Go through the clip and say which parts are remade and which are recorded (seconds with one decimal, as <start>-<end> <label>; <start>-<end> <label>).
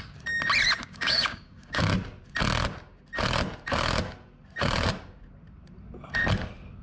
0.0-0.8 recorded; 0.8-1.8 remade; 1.8-6.8 recorded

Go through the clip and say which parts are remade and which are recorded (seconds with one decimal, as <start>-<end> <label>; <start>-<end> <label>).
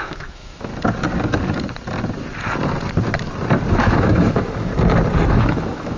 0.0-0.7 remade; 0.7-3.7 recorded; 3.7-4.7 remade; 4.7-5.3 recorded; 5.3-6.0 remade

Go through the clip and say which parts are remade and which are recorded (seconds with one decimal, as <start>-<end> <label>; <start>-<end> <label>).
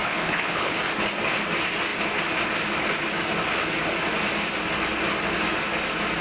0.0-0.8 remade; 0.8-6.2 recorded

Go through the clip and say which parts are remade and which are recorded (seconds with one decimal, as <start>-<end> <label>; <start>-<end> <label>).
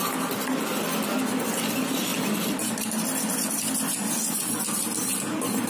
0.0-5.7 recorded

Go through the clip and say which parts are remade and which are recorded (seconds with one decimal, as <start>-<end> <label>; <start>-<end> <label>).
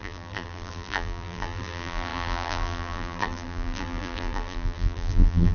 0.0-5.5 remade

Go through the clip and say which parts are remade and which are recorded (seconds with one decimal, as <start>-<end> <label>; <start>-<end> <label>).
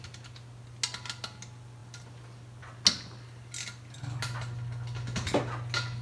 0.0-6.0 recorded